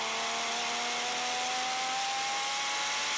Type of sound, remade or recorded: recorded